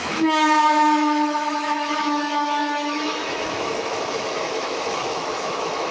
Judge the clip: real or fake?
fake